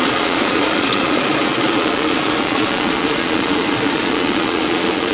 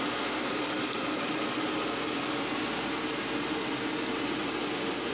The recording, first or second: second